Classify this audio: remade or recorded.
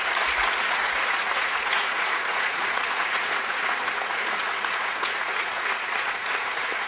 remade